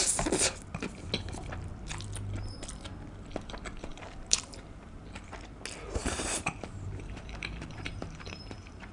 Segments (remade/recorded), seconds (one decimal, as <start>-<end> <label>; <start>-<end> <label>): 0.0-3.9 recorded; 3.9-5.0 remade; 5.0-6.0 recorded; 6.0-8.9 remade